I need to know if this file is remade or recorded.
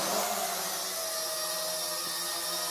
recorded